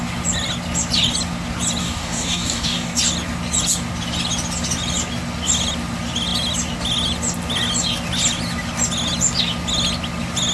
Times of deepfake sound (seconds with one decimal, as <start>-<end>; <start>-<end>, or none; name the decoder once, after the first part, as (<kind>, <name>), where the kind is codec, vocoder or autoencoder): 1.8-3.0 (codec, DAC)